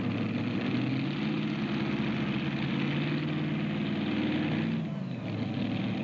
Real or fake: real